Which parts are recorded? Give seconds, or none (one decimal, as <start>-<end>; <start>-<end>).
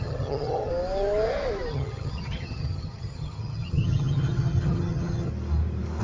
0.7-1.7; 5.3-6.0